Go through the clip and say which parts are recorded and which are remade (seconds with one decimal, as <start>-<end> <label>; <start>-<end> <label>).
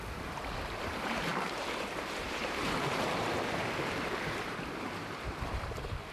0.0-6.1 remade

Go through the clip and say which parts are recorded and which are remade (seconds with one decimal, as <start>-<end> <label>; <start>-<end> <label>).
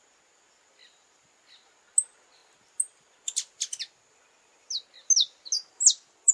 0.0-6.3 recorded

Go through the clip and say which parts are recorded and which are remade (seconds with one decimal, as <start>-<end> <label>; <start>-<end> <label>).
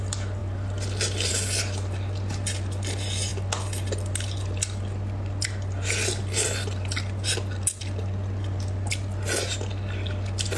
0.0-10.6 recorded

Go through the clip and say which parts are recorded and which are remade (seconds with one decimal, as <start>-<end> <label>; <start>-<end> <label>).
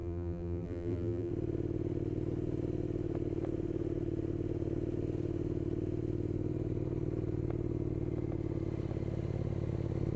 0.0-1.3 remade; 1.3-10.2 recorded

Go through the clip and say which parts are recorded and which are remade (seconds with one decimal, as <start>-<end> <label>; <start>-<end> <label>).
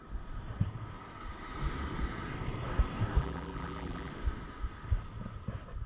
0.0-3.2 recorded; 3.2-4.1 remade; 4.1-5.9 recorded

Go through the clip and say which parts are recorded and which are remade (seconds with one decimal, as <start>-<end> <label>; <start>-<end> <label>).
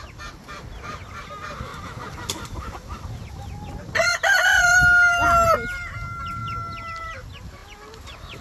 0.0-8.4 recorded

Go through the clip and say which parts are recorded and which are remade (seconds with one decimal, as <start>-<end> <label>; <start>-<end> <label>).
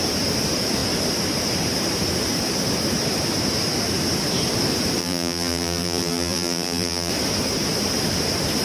0.0-5.0 recorded; 5.0-7.1 remade; 7.1-8.6 recorded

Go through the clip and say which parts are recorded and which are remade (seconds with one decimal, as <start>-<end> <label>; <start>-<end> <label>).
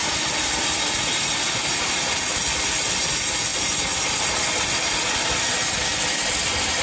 0.0-2.2 remade; 2.2-6.8 recorded